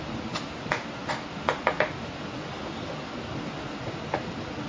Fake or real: real